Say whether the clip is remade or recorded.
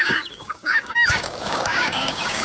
remade